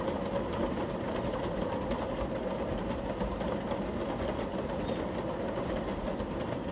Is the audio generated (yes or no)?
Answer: no